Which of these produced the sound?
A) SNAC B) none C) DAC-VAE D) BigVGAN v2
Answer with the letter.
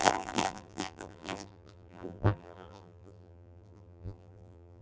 D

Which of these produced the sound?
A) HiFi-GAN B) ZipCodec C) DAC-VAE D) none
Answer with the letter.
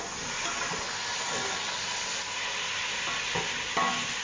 D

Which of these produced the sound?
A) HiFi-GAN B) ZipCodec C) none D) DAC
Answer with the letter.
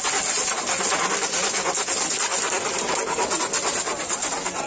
C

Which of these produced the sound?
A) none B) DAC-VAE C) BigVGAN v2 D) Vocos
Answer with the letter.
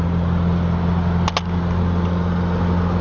A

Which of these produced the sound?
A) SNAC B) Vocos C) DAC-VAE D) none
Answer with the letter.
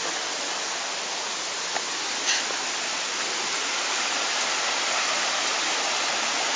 D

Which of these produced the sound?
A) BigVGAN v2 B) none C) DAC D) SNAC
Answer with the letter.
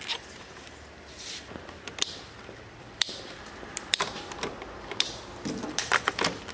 A